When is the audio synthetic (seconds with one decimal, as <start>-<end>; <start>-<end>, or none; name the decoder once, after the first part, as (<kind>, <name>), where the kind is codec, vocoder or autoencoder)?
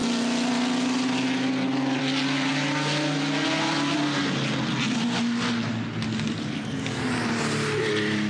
none